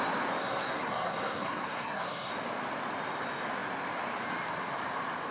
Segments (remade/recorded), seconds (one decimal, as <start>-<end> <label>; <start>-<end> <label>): 0.0-0.4 recorded; 0.4-2.3 remade; 2.3-5.3 recorded